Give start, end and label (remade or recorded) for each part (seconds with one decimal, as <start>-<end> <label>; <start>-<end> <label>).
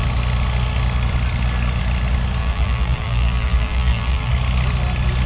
0.0-2.4 recorded; 2.4-4.3 remade; 4.3-5.3 recorded